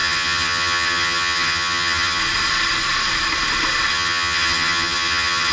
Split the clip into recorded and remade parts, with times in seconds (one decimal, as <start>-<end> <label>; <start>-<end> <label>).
0.0-2.2 remade; 2.2-3.9 recorded; 3.9-5.5 remade